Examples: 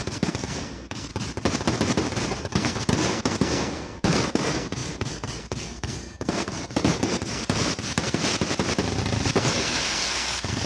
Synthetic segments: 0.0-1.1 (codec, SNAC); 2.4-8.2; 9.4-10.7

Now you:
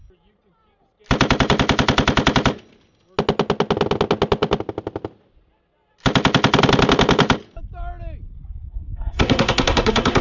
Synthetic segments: 8.7-10.2 (codec, SNAC)